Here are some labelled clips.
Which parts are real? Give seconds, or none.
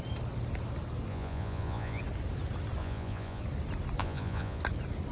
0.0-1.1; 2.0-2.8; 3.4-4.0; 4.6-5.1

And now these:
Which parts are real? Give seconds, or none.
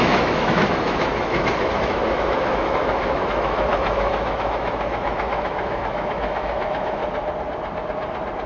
7.0-8.5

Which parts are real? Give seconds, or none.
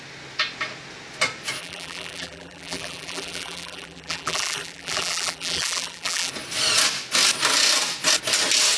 0.0-1.6; 6.3-8.8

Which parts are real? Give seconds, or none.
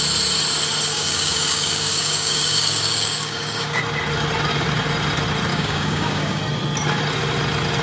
0.0-0.9; 3.8-5.5; 6.4-7.8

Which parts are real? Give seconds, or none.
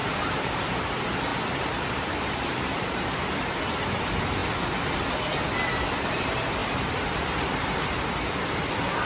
0.6-1.3; 3.2-6.6; 7.2-9.1